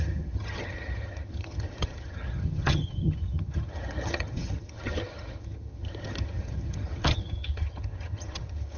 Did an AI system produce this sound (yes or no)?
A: yes